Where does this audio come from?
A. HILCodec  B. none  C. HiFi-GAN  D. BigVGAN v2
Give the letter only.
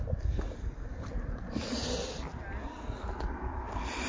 B